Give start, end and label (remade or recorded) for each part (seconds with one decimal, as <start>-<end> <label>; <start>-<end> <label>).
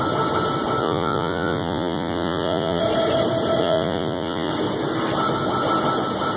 0.0-0.8 recorded; 0.8-2.8 remade; 2.8-3.6 recorded; 3.6-4.5 remade; 4.5-6.4 recorded